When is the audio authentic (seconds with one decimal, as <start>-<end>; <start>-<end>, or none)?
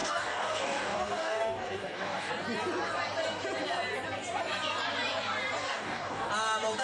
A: 2.3-5.6; 6.3-6.8